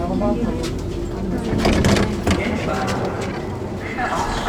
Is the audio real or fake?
real